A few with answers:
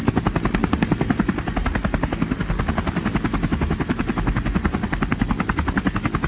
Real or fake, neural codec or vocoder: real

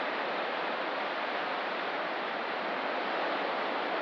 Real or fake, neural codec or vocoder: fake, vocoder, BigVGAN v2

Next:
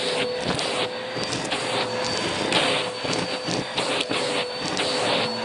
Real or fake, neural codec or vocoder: real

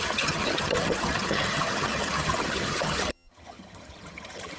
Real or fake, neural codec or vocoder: fake, vocoder, HiFi-GAN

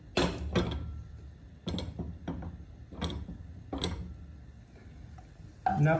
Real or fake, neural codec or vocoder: real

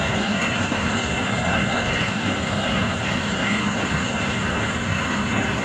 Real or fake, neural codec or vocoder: fake, codec, SNAC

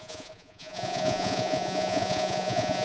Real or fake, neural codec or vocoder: fake, vocoder, Vocos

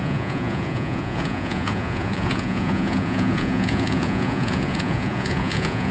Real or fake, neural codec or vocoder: fake, vocoder, Vocos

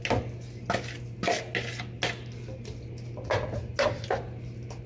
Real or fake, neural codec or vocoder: real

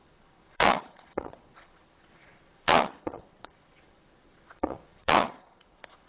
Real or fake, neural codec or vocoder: fake, vocoder, Vocos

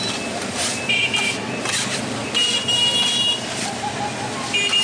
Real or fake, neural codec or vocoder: real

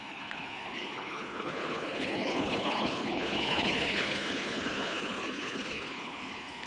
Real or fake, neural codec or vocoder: fake, codec, HILCodec